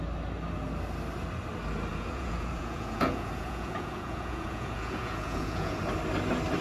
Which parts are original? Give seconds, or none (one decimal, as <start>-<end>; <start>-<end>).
0.0-1.9; 5.8-6.6